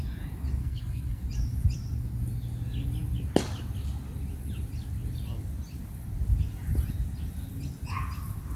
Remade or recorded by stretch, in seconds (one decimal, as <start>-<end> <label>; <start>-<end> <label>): 0.0-0.6 recorded; 0.6-1.2 remade; 1.2-8.6 recorded